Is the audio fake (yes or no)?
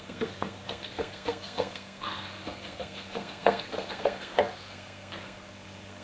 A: yes